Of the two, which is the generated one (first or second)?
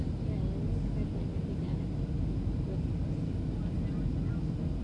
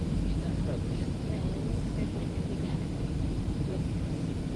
second